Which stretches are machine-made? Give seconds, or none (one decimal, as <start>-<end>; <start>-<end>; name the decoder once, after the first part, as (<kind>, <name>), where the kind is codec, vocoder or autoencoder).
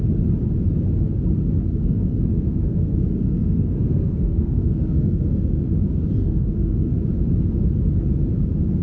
1.7-5.6 (codec, SNAC); 6.2-6.9